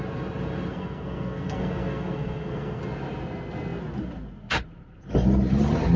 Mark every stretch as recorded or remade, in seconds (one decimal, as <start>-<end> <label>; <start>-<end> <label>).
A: 0.0-0.7 recorded; 0.7-2.8 remade; 2.8-6.0 recorded